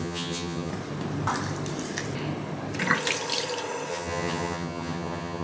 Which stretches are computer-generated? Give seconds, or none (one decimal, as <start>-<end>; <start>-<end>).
0.0-0.7; 3.9-5.4